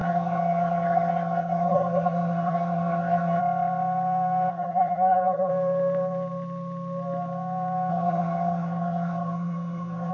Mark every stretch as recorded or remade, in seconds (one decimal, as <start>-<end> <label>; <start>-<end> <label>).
0.0-3.4 remade; 3.4-4.5 recorded; 4.5-5.5 remade; 5.5-7.9 recorded; 7.9-10.1 remade